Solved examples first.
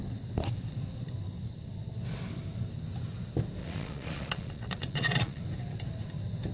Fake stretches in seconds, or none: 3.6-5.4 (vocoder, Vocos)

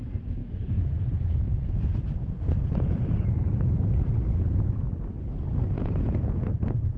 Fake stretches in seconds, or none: 0.4-4.6 (vocoder, Vocos); 5.8-7.0

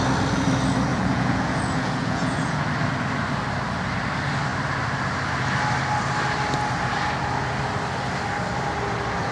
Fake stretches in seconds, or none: 0.9-2.7 (vocoder, Vocos)

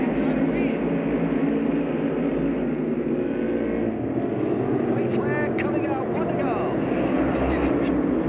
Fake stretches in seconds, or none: none